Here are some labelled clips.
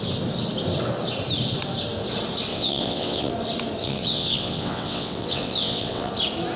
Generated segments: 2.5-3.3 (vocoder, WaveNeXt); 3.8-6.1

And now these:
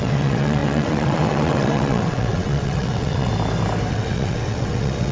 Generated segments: 0.0-3.3 (vocoder, WaveNeXt); 3.9-5.1

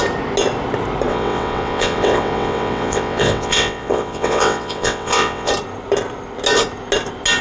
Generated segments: 1.1-5.5 (vocoder, WaveNeXt)

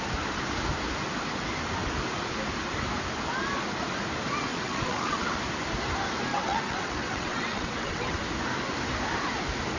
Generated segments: 4.5-5.4 (vocoder, WaveNeXt); 6.3-8.2

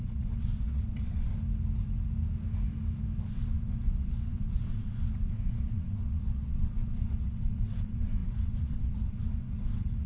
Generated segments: 0.0-1.3 (vocoder, WaveNeXt); 3.3-10.1

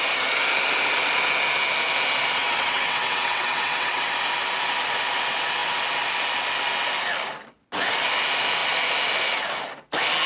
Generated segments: 2.4-4.1 (vocoder, WaveNeXt)